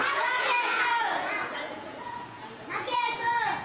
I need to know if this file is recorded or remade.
remade